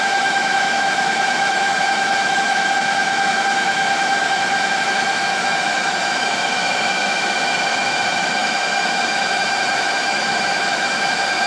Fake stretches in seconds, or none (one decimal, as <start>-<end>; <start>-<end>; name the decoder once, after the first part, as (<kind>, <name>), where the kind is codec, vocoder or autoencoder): 0.0-11.5 (autoencoder, DAC-VAE)